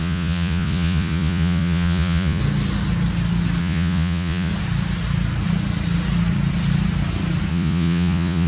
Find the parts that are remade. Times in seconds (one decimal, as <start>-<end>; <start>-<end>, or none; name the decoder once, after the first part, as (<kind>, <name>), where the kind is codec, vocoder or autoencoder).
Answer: 0.0-2.4 (vocoder, Vocos); 3.6-4.5; 7.5-8.5